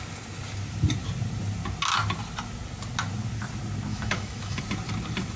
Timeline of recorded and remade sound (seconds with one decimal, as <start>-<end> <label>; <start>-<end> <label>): 0.0-3.9 recorded; 3.9-4.6 remade; 4.6-5.4 recorded